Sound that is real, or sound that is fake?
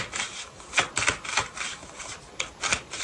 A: real